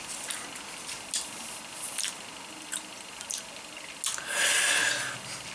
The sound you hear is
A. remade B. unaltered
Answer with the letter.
B